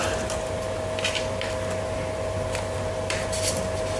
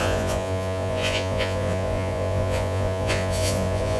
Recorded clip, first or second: first